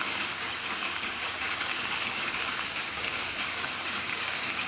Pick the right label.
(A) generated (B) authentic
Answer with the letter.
A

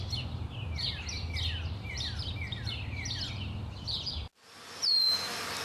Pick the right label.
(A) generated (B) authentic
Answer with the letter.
B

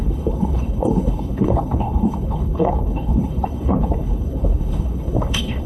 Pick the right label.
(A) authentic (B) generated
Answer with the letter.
B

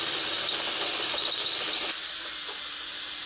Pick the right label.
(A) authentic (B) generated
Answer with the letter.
A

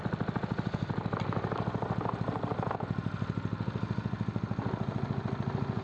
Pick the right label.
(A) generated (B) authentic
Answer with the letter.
B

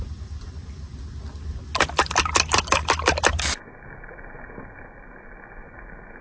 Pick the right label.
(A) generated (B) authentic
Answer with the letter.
B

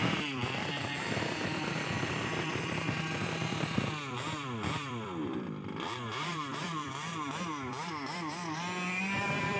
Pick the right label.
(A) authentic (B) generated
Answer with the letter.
B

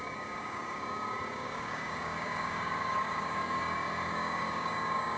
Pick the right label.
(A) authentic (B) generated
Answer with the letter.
B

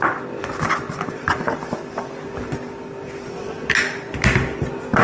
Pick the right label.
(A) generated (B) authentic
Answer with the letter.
B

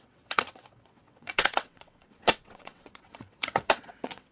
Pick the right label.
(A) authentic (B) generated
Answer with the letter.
B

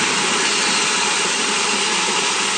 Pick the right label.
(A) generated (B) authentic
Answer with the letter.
B